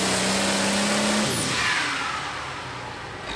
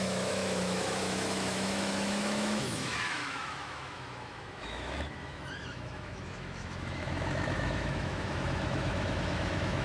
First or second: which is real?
first